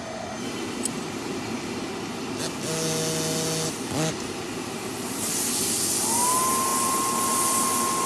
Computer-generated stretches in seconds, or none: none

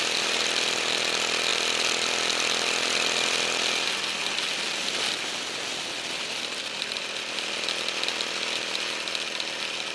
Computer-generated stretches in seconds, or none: none

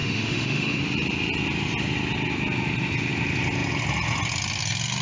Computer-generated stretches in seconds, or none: 0.0-0.8 (autoencoder, DAC-VAE)

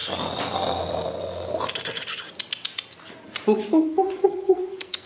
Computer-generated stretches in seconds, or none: 3.7-5.1 (codec, SNAC)

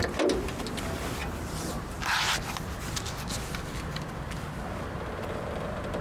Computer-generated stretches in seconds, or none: none